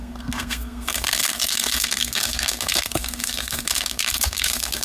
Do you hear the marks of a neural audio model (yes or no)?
yes